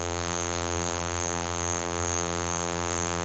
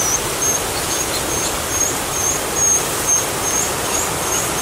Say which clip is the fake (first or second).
first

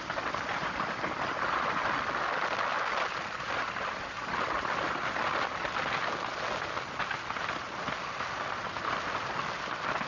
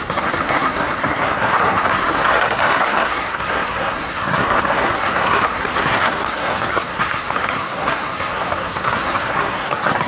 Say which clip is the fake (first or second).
second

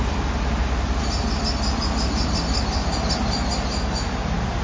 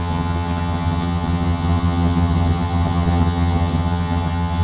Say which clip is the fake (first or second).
second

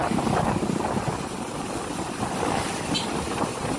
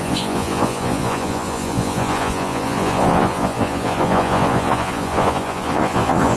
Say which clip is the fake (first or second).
second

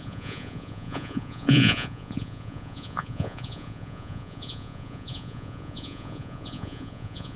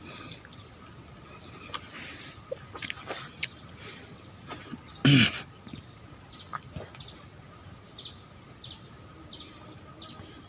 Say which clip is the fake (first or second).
first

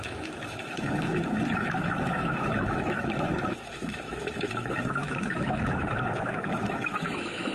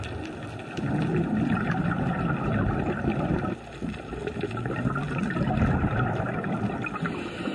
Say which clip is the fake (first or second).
first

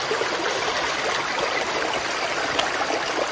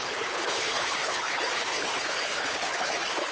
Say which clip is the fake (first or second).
second